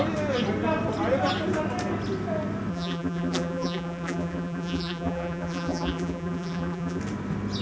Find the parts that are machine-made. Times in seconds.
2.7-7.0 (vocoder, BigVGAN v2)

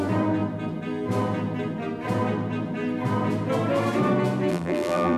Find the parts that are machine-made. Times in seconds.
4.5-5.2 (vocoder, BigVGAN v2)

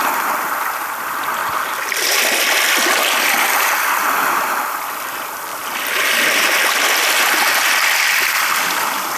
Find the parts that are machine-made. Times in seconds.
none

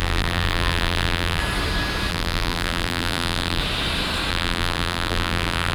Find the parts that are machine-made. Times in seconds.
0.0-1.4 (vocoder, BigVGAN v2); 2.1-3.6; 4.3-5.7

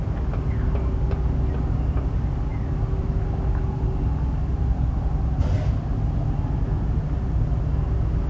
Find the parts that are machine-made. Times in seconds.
2.5-3.1 (vocoder, BigVGAN v2); 4.5-5.1